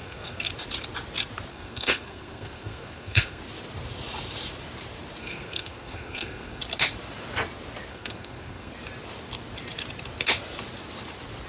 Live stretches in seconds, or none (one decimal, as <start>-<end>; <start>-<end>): 0.5-1.5; 3.4-5.2; 6.6-7.9; 8.7-11.5